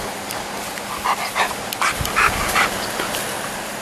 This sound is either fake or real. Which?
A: real